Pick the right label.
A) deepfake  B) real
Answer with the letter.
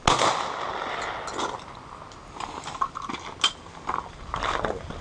B